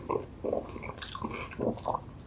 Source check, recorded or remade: recorded